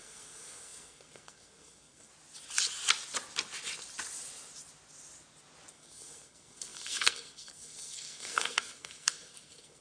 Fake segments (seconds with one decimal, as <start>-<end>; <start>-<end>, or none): 0.0-2.1; 5.7-9.8